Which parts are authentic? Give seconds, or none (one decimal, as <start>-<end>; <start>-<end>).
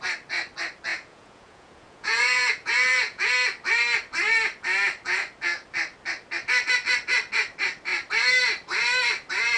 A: 0.0-0.9; 3.3-9.6